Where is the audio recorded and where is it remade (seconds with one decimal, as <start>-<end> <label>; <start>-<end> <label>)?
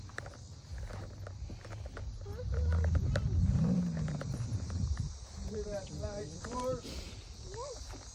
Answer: 0.0-3.4 recorded; 3.4-6.9 remade; 6.9-8.1 recorded